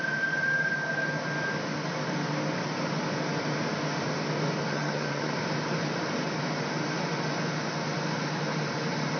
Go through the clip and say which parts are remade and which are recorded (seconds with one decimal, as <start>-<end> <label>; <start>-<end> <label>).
0.0-4.7 recorded; 4.7-5.3 remade; 5.3-9.2 recorded